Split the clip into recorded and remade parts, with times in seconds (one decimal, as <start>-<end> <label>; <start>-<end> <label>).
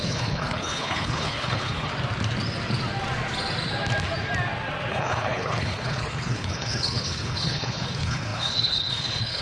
0.0-1.9 remade; 1.9-4.9 recorded; 4.9-9.4 remade